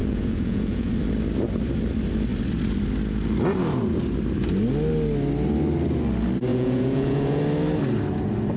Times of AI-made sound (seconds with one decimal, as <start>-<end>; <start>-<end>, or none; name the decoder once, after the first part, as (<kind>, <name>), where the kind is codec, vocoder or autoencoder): 0.0-0.9 (vocoder, Vocos); 6.5-7.4